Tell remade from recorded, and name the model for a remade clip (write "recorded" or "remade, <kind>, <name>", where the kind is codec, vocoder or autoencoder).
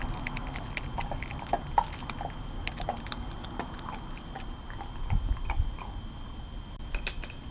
recorded